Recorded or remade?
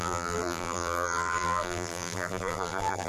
remade